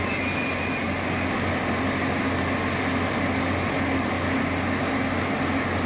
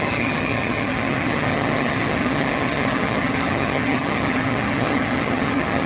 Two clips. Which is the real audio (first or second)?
first